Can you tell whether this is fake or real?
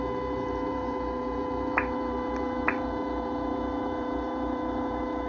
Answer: fake